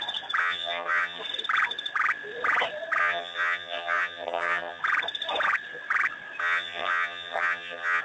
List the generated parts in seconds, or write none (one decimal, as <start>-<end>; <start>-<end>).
0.4-1.2; 3.0-4.8; 6.4-8.0